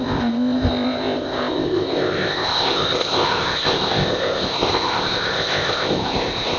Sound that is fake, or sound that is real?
fake